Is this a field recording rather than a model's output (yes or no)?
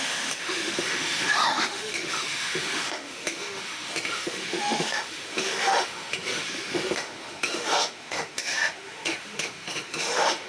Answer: no